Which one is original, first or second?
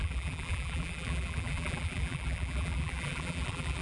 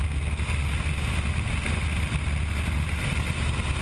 second